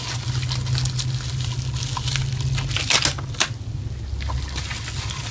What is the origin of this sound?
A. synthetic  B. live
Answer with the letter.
B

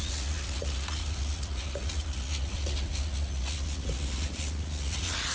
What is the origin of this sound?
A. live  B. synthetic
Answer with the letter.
B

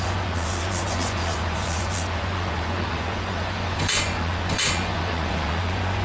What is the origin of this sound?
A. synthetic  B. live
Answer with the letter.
A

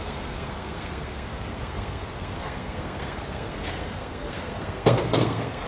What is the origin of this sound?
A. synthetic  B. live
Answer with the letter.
A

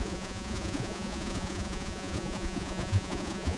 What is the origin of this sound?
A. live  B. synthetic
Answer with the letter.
B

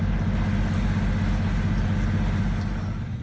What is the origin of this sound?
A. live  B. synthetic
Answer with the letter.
A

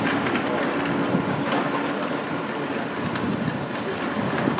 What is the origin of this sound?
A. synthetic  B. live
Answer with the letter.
B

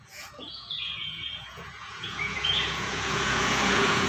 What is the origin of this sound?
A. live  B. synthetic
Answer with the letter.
B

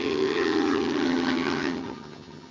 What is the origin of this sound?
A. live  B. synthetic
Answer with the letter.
B